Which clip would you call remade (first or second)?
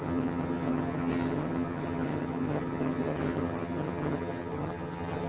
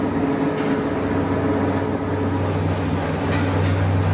first